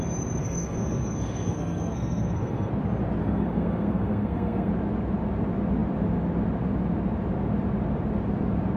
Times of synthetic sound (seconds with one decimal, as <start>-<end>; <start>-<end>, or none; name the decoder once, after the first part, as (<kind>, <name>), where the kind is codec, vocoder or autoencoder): 0.4-2.7 (codec, SNAC); 3.2-4.7